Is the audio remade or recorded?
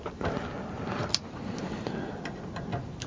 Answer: recorded